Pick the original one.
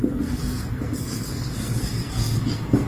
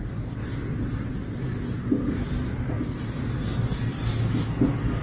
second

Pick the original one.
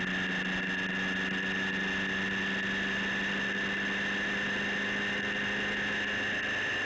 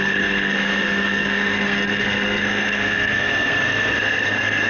first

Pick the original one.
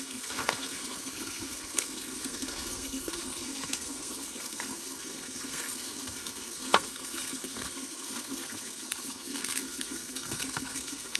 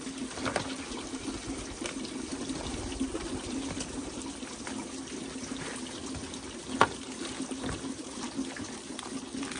second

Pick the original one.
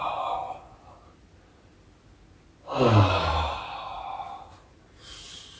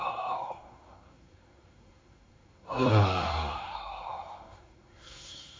first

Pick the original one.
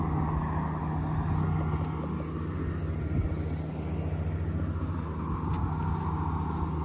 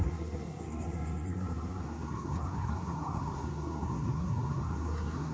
first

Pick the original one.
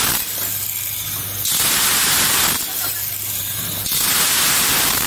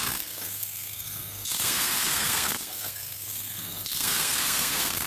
first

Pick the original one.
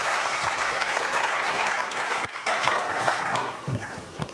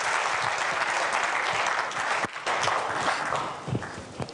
second